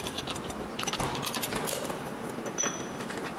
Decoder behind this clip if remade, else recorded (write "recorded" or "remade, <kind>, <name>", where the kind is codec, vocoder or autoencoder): recorded